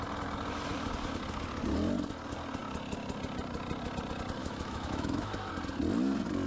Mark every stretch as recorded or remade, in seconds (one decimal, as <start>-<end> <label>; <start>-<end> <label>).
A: 0.0-4.4 recorded; 4.4-5.5 remade; 5.5-6.5 recorded